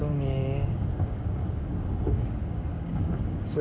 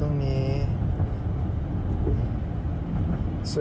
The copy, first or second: first